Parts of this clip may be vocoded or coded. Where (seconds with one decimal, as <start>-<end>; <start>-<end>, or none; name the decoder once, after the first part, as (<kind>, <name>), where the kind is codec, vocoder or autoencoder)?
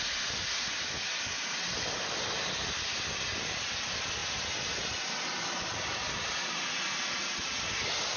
none